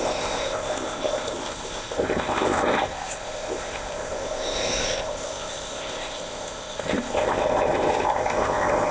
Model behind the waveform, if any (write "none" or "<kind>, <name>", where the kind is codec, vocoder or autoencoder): codec, ZipCodec